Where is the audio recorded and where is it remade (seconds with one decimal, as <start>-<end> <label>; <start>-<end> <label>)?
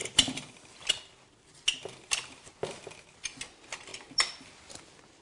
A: 0.0-5.2 recorded